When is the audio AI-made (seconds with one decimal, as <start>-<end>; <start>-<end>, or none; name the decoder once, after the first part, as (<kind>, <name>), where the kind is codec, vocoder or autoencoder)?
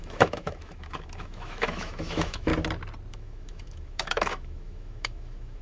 0.0-2.5 (autoencoder, DAC-VAE); 3.1-5.6